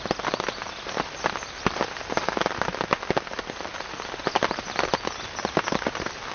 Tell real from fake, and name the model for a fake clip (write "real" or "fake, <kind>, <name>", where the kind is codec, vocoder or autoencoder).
real